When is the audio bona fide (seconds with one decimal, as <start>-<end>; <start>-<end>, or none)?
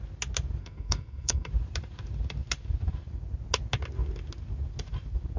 0.0-0.6; 1.5-5.4